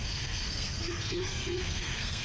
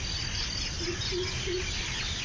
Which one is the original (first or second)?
second